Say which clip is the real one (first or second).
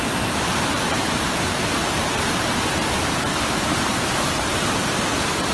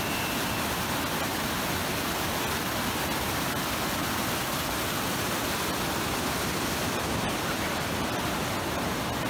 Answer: second